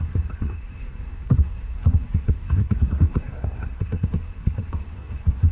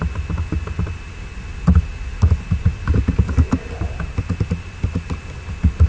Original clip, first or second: second